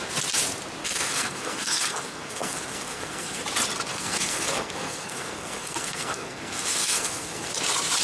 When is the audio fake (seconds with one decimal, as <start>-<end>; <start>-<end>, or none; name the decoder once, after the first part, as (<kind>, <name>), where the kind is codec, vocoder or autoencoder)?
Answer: 0.8-3.4 (codec, SNAC); 3.9-7.5